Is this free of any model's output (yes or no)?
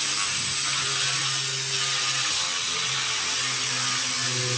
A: yes